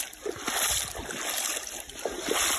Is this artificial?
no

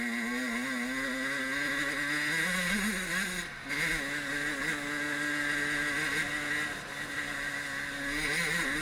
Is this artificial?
no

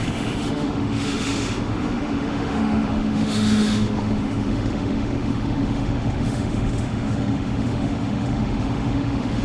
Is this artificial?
yes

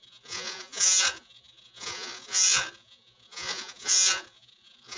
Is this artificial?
yes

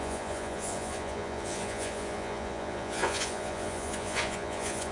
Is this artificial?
yes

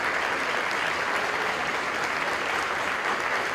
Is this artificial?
no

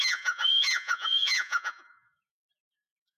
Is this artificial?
yes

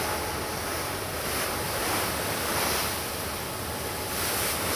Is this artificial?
no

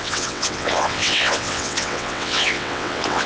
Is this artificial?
yes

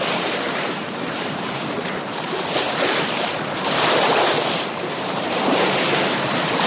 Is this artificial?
yes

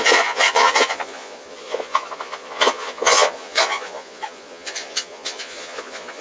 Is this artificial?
yes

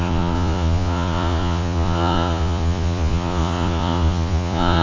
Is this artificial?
yes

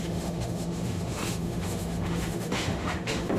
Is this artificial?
yes